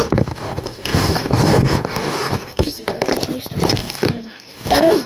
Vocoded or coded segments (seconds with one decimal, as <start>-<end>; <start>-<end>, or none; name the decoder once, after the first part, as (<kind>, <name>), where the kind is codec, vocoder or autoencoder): 0.0-3.1 (codec, DAC); 3.7-5.1